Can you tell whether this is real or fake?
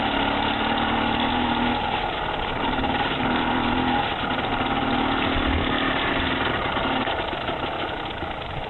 real